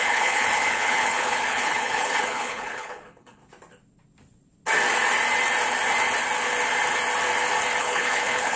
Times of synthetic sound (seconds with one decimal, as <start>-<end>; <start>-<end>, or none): 0.0-3.4; 7.8-8.6